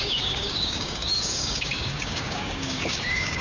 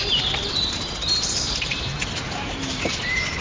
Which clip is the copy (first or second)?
first